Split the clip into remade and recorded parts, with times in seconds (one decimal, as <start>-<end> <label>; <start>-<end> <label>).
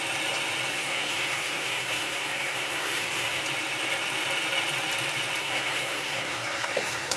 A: 0.0-0.7 recorded; 0.7-3.4 remade; 3.4-5.4 recorded; 5.4-7.2 remade